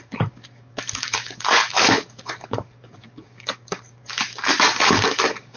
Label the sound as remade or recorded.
remade